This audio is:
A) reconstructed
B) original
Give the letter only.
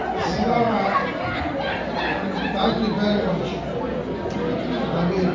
B